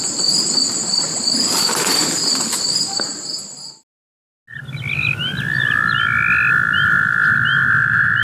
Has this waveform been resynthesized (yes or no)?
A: no